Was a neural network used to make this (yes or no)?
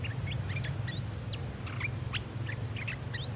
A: no